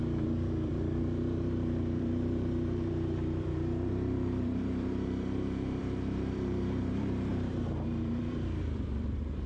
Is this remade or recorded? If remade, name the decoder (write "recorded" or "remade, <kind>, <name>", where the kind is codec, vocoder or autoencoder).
remade, vocoder, BigVGAN v2